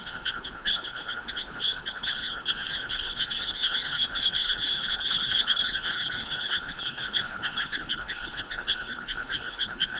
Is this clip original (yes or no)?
no